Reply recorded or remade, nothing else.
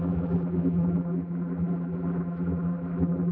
remade